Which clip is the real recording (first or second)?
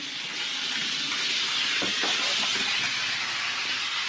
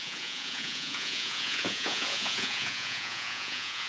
first